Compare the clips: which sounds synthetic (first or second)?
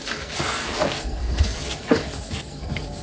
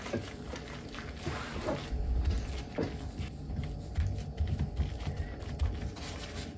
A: first